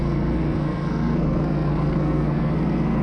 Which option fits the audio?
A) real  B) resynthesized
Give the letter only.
B